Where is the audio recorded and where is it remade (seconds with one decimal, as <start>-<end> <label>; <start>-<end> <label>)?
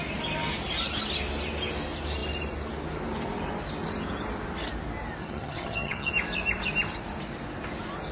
0.0-5.2 recorded; 5.2-6.1 remade; 6.1-8.1 recorded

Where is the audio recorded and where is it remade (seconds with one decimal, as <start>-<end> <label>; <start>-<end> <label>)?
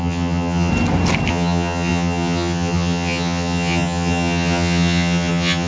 0.0-0.7 remade; 0.7-1.3 recorded; 1.3-5.7 remade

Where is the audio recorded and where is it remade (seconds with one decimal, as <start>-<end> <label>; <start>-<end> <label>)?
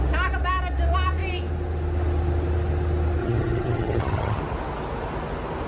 0.0-3.2 recorded; 3.2-4.4 remade; 4.4-5.7 recorded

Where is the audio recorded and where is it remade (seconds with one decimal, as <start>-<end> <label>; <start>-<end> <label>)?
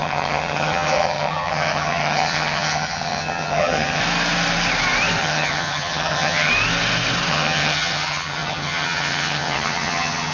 0.0-4.0 remade; 4.0-5.2 recorded; 5.2-6.5 remade; 6.5-7.3 recorded; 7.3-10.3 remade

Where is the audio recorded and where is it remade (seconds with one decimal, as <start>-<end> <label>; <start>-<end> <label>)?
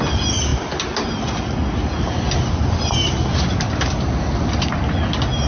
0.0-5.5 recorded